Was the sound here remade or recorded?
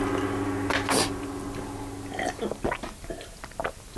recorded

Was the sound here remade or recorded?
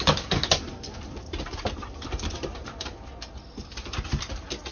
recorded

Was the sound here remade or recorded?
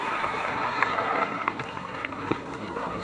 remade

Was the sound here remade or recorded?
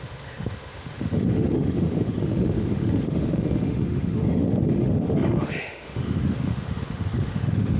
remade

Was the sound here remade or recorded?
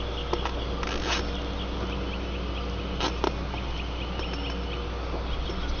recorded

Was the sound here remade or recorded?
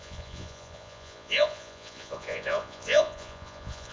remade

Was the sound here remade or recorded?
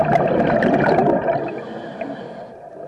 recorded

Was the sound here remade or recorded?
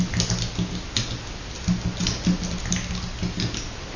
recorded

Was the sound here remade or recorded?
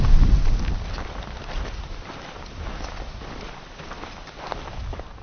recorded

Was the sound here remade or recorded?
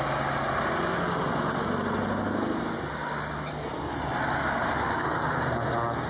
recorded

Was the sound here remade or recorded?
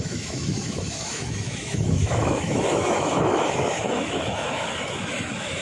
remade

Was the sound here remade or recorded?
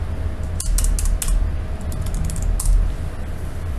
recorded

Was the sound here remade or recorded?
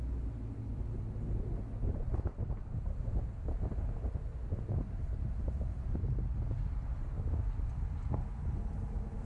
recorded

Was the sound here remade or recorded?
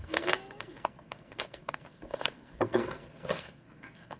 remade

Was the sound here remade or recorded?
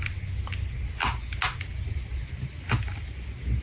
recorded